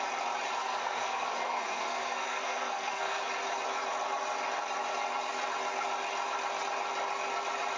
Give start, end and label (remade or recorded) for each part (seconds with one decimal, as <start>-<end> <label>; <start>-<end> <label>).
0.0-0.6 recorded; 0.6-3.2 remade; 3.2-7.8 recorded